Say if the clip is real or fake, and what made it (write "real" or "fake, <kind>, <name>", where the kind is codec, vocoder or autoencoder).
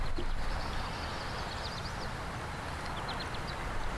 real